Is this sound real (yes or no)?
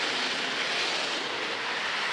yes